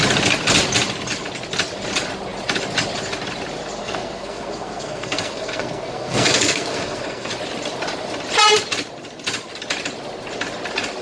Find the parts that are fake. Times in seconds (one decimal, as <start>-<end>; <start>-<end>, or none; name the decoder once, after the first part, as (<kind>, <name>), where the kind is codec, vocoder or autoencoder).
3.8-7.3 (codec, SNAC)